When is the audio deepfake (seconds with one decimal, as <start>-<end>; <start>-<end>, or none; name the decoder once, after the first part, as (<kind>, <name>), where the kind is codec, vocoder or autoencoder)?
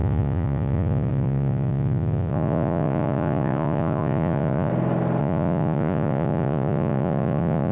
0.0-4.7 (vocoder, Vocos); 5.2-7.7